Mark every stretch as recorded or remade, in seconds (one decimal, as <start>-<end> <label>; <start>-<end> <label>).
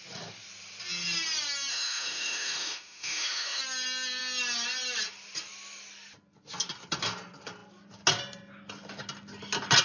0.0-1.7 recorded; 1.7-3.6 remade; 3.6-9.8 recorded